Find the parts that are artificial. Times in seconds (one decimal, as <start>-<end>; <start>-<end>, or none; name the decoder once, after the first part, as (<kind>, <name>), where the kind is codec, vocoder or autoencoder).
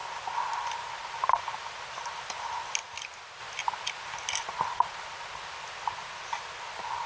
none